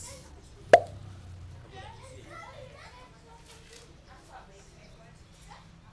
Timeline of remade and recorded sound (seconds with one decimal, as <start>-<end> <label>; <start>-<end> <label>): 0.0-5.9 recorded